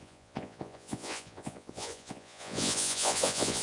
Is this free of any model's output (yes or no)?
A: no